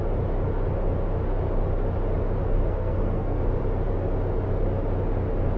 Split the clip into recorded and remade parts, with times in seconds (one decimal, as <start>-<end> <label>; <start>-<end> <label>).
0.0-2.6 recorded; 2.6-3.4 remade; 3.4-5.6 recorded